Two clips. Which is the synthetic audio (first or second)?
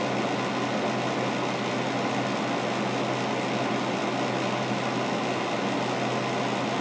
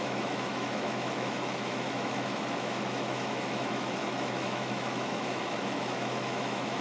second